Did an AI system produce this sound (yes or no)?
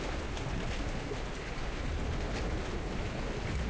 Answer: no